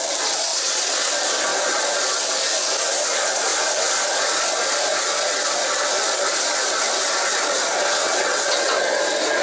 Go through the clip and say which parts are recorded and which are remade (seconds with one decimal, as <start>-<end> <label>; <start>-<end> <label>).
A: 0.0-0.5 recorded; 0.5-1.1 remade; 1.1-8.0 recorded; 8.0-9.0 remade; 9.0-9.4 recorded

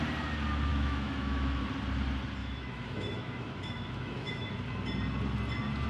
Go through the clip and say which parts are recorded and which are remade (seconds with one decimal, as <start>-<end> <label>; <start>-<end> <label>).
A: 0.0-0.7 recorded; 0.7-1.6 remade; 1.6-2.4 recorded; 2.4-4.5 remade; 4.5-5.9 recorded

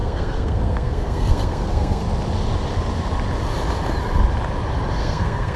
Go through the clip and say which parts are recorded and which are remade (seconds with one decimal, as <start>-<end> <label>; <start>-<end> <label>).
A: 0.0-2.0 remade; 2.0-4.9 recorded; 4.9-5.6 remade

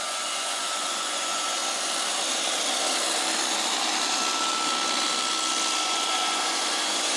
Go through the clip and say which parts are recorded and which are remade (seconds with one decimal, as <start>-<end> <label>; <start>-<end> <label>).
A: 0.0-1.6 remade; 1.6-5.8 recorded; 5.8-7.2 remade